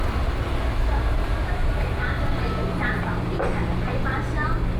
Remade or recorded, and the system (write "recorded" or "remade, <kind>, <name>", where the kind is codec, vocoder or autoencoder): recorded